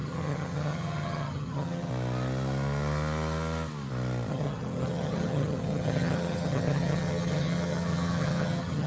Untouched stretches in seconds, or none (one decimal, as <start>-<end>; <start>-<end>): 1.9-4.3